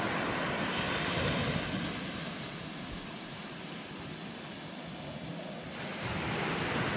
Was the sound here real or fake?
real